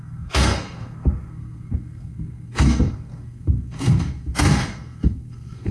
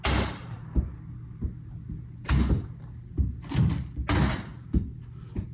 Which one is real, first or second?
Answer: second